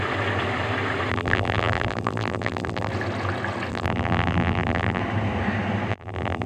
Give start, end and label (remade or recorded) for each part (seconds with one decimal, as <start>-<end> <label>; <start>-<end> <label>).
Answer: 0.0-1.1 recorded; 1.1-2.9 remade; 2.9-3.7 recorded; 3.7-5.0 remade; 5.0-5.9 recorded; 5.9-6.5 remade